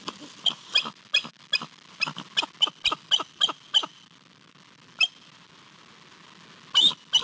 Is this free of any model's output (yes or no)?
yes